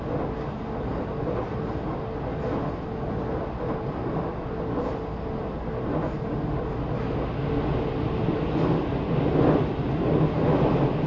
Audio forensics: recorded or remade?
recorded